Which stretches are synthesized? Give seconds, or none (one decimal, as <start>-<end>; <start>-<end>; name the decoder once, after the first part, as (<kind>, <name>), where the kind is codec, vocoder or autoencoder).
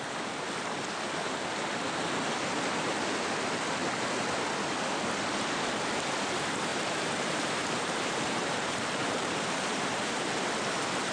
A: 6.7-11.1 (vocoder, BigVGAN v2)